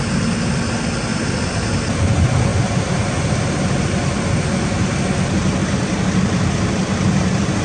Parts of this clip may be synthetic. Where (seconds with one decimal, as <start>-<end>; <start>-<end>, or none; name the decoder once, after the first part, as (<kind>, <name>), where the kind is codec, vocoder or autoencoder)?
1.1-1.6 (vocoder, BigVGAN v2); 2.5-3.2